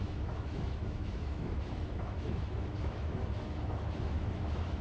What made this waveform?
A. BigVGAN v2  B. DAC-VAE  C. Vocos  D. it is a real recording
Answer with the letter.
B